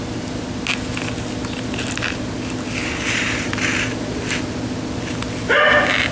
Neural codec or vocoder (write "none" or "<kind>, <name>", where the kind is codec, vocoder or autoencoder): none